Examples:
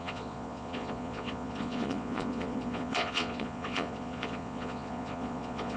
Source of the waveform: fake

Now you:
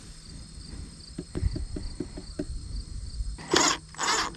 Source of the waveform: real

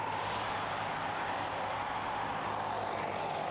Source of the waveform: real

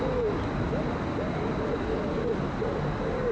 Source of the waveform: real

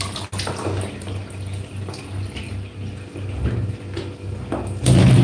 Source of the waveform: real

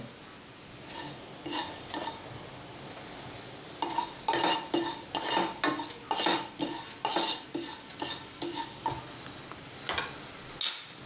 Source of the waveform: real